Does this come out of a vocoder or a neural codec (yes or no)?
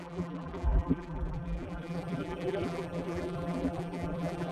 yes